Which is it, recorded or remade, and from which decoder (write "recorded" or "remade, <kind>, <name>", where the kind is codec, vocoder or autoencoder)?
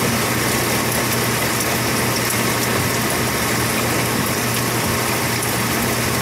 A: recorded